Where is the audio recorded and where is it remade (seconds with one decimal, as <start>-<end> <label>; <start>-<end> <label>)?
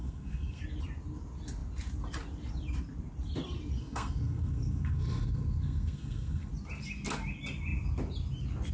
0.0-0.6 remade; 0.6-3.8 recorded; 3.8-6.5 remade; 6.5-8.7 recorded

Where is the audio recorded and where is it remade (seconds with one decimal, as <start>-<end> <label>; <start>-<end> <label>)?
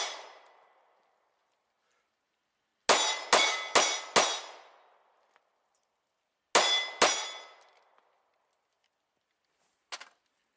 0.0-10.6 recorded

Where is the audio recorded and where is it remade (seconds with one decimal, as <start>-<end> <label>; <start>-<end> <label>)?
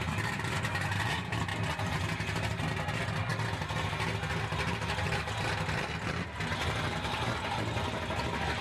0.0-8.6 recorded